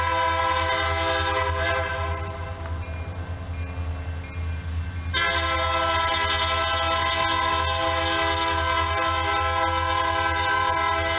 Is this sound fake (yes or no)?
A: no